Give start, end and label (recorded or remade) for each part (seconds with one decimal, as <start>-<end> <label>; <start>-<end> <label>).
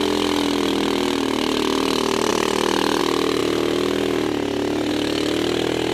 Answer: 0.0-2.3 recorded; 2.3-3.0 remade; 3.0-5.9 recorded